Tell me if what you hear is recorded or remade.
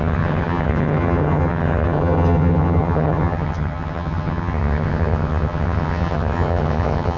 remade